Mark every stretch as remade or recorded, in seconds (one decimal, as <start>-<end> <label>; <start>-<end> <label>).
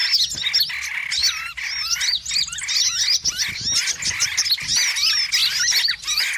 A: 0.0-6.4 recorded